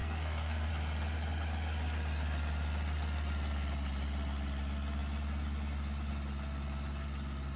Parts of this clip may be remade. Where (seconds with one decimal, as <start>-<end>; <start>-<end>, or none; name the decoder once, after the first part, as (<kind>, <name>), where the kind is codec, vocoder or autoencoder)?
0.0-0.7 (codec, SNAC)